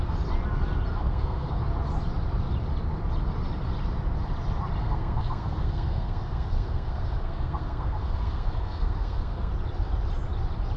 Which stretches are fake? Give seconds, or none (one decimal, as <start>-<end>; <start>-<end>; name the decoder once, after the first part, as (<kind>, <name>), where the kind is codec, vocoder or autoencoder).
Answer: 1.0-1.6 (codec, SNAC); 4.8-9.5